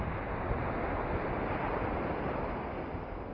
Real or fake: real